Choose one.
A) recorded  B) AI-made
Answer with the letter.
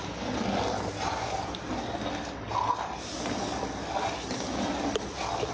A